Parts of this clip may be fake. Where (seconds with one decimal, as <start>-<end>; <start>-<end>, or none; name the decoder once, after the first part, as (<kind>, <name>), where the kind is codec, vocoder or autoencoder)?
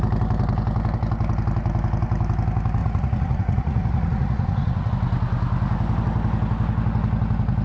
2.8-4.9 (vocoder, Vocos)